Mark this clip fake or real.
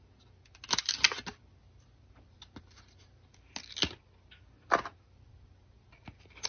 real